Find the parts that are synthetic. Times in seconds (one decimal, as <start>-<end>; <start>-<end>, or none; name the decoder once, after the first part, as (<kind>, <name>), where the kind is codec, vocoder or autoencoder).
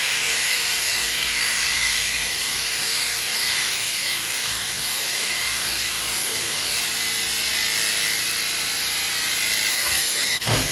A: 0.0-6.8 (codec, DAC); 9.7-10.7